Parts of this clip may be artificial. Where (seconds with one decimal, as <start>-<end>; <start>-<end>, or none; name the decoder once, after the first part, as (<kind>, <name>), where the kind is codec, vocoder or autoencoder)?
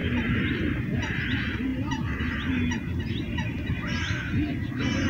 0.0-0.9 (vocoder, BigVGAN v2)